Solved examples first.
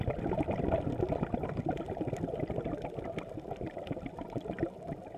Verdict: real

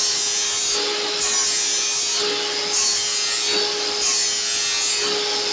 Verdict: real